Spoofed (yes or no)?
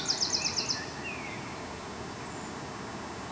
no